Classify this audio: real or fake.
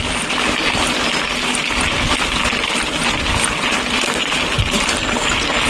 real